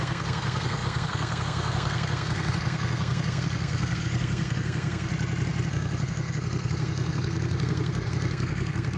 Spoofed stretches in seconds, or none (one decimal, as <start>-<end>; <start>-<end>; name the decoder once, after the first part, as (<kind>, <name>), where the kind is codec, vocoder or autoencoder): 0.0-5.1 (codec, SNAC); 5.7-9.0